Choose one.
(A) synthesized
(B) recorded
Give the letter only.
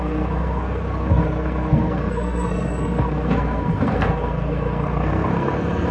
A